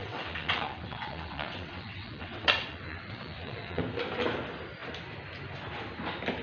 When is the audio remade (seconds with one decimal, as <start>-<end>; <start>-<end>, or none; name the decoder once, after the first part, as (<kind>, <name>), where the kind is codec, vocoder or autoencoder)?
0.0-3.8 (vocoder, WaveNeXt)